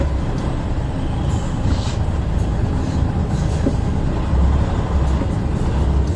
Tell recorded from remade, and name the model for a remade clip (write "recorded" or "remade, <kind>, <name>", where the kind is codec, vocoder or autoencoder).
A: recorded